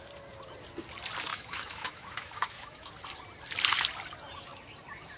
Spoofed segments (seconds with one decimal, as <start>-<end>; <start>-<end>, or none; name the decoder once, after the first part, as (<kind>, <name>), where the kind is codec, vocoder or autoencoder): 1.3-2.9 (autoencoder, DAC-VAE)